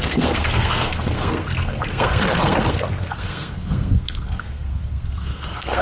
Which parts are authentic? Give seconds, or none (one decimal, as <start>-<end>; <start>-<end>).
none